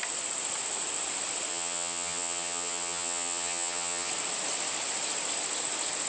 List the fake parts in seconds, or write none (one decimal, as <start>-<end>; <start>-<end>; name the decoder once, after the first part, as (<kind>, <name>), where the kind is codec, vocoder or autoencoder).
1.5-4.1 (vocoder, HiFi-GAN)

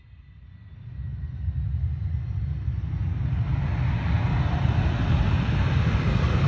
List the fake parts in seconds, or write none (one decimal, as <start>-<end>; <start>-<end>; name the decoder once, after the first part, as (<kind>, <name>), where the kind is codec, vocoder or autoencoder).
none

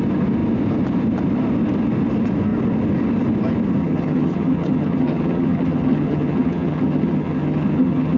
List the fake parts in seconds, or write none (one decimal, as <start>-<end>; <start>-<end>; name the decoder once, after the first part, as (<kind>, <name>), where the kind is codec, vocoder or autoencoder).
3.8-8.2 (vocoder, HiFi-GAN)

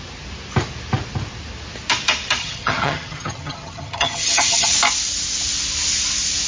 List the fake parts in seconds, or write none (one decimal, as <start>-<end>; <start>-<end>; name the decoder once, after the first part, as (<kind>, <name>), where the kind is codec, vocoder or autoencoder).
2.4-4.7 (vocoder, HiFi-GAN)

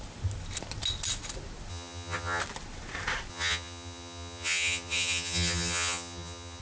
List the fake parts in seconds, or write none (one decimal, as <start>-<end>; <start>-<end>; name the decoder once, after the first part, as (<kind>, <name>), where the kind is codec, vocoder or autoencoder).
1.7-2.4 (vocoder, HiFi-GAN); 3.3-6.6